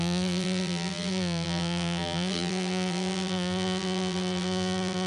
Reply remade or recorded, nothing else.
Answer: remade